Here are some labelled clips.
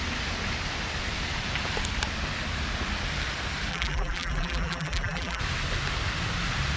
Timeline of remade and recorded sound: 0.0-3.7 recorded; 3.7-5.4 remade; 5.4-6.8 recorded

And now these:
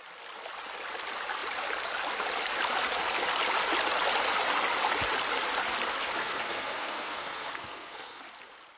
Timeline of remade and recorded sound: 0.0-6.2 recorded; 6.2-8.2 remade; 8.2-8.8 recorded

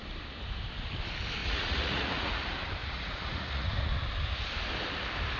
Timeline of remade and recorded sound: 0.0-1.4 recorded; 1.4-2.4 remade; 2.4-2.8 recorded; 2.8-3.9 remade; 3.9-5.4 recorded

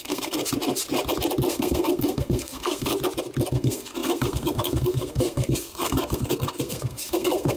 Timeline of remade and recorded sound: 0.0-0.4 remade; 0.4-1.5 recorded; 1.5-2.9 remade; 2.9-3.5 recorded; 3.5-7.6 remade

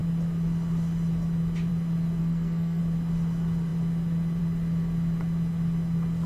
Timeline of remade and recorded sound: 0.0-2.2 recorded; 2.2-2.8 remade; 2.8-6.3 recorded